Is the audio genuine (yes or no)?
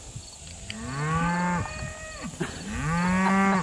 yes